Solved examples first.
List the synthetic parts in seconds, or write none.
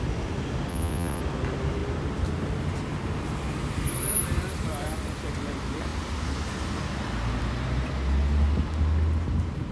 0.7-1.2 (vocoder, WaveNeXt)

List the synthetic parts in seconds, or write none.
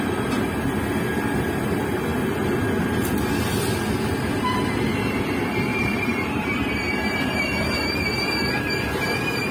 5.7-8.5 (vocoder, BigVGAN v2)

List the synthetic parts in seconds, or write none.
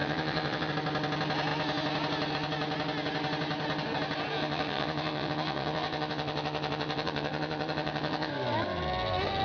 0.0-0.7 (vocoder, WaveNeXt); 4.4-8.3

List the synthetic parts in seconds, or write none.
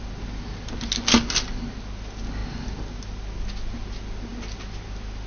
none